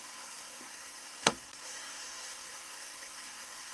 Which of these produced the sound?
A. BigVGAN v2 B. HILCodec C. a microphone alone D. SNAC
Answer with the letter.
D